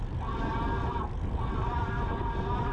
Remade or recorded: recorded